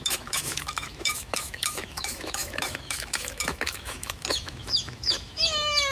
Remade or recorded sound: remade